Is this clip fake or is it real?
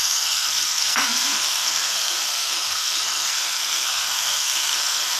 fake